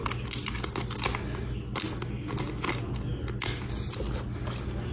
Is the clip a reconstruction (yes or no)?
no